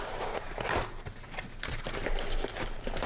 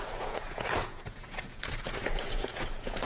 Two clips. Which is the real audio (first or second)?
first